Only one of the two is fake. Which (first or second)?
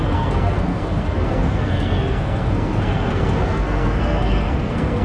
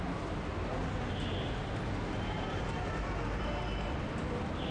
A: first